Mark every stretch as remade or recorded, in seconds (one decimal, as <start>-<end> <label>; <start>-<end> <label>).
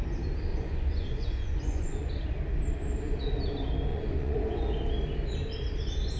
0.0-0.5 recorded; 0.5-2.1 remade; 2.1-3.9 recorded; 3.9-4.6 remade; 4.6-6.2 recorded